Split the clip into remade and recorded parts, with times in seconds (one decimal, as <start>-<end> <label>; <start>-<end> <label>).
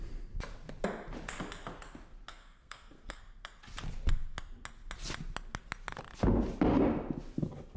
0.0-2.3 recorded; 2.3-3.2 remade; 3.2-7.8 recorded